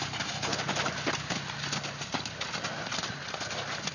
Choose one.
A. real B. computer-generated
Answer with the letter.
A